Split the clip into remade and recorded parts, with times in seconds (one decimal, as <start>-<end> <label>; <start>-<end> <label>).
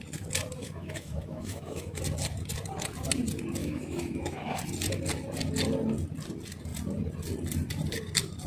0.0-0.6 recorded; 0.6-2.0 remade; 2.0-3.6 recorded; 3.6-4.6 remade; 4.6-8.5 recorded